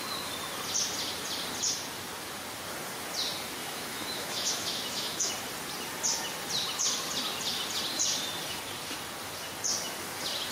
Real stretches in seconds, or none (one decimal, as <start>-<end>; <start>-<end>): 0.0-3.6; 5.3-10.5